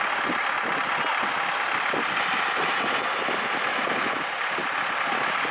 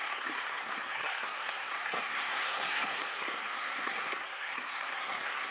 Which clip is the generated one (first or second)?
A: second